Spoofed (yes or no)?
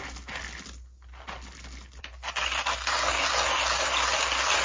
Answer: no